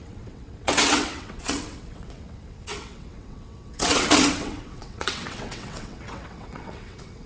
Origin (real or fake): fake